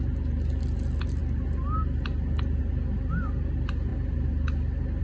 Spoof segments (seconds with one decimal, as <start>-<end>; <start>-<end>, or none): none